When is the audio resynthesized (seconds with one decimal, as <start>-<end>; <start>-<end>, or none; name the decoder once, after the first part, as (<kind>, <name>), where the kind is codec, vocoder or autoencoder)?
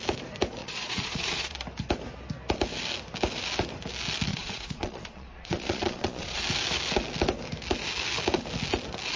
0.6-1.5 (vocoder, Vocos); 4.3-6.4